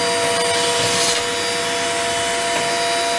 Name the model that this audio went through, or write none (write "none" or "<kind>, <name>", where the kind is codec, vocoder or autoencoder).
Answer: none